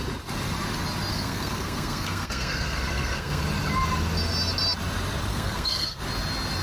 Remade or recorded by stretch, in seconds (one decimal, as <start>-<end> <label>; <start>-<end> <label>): 0.0-1.1 recorded; 1.1-3.4 remade; 3.4-5.3 recorded; 5.3-6.0 remade; 6.0-6.6 recorded